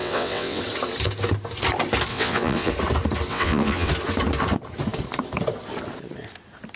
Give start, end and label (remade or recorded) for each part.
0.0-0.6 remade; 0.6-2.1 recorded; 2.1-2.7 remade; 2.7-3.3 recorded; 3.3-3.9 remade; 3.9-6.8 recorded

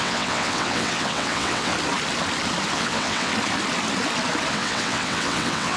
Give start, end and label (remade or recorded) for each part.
0.0-1.7 remade; 1.7-2.7 recorded; 2.7-3.3 remade; 3.3-4.5 recorded; 4.5-5.8 remade